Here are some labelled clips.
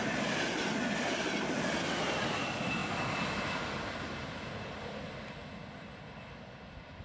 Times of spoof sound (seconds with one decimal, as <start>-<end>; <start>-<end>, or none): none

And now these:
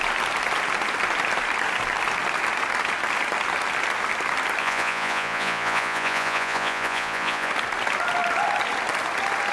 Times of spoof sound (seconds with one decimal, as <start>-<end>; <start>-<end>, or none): 4.6-7.5

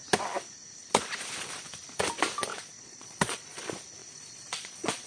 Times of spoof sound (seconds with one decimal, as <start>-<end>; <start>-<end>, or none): 2.5-3.6; 4.0-5.1

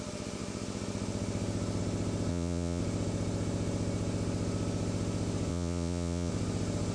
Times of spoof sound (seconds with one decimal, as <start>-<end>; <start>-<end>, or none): 2.3-2.8; 5.5-6.3